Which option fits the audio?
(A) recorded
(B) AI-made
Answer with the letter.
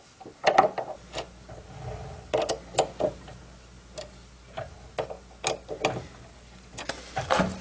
A